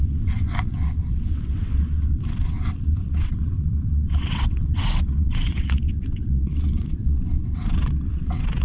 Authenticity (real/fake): fake